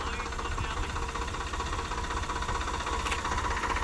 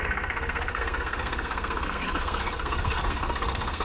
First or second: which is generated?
second